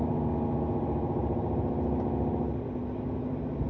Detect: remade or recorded recorded